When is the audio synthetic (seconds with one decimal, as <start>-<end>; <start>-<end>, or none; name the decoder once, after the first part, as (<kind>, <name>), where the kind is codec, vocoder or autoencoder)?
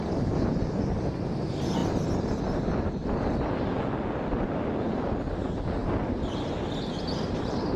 none